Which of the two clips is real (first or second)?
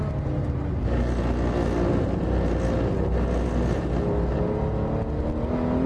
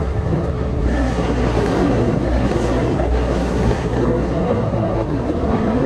first